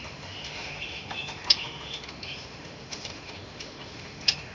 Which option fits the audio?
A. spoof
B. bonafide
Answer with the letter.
A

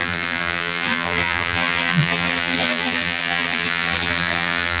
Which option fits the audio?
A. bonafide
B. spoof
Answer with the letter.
B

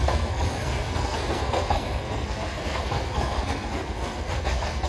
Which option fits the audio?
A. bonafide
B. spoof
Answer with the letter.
B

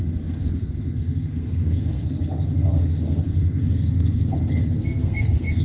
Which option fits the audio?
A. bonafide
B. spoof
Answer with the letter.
B